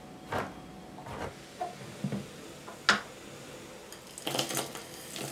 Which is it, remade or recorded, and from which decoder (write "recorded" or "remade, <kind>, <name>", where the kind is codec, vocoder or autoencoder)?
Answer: recorded